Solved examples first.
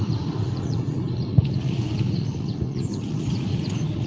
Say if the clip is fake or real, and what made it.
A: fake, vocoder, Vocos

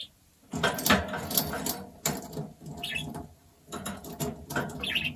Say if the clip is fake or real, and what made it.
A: real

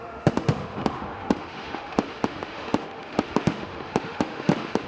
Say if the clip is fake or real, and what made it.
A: fake, autoencoder, DAC-VAE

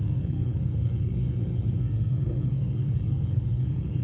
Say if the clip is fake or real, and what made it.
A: fake, codec, SNAC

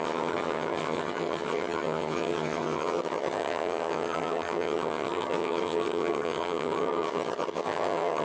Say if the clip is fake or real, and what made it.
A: fake, vocoder, HiFi-GAN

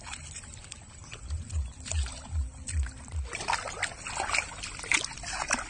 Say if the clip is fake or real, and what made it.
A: real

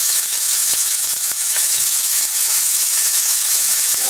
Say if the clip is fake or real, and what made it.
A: fake, autoencoder, DAC-VAE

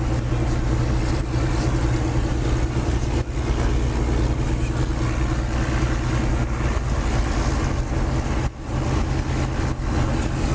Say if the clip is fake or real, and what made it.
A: real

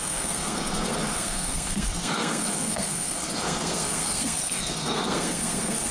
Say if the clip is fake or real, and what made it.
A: fake, codec, SNAC